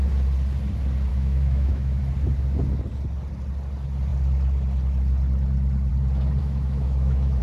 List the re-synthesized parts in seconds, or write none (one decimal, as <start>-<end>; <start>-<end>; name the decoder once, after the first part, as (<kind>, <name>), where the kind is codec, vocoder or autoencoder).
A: 1.1-2.0 (autoencoder, DAC-VAE); 6.4-7.4